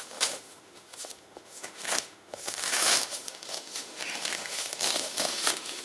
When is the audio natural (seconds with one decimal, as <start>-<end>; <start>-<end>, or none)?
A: none